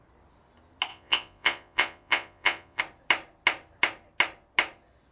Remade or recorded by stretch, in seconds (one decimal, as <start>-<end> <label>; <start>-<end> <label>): 0.0-0.9 recorded; 0.9-2.8 remade; 2.8-5.1 recorded